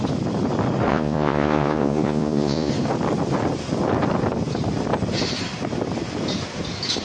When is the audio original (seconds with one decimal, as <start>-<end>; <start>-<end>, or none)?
0.0-0.9; 2.7-7.0